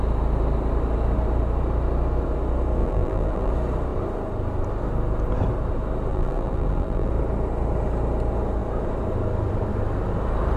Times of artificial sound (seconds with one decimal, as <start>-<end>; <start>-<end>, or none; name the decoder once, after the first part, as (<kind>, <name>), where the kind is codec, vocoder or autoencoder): 2.8-3.5 (vocoder, BigVGAN v2); 6.1-7.1